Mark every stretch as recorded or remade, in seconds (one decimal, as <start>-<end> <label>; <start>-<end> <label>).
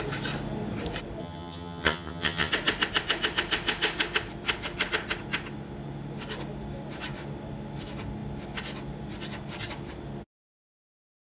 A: 0.0-1.2 recorded; 1.2-2.5 remade; 2.5-11.2 recorded